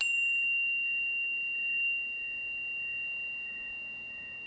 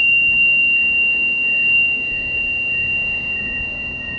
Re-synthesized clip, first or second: second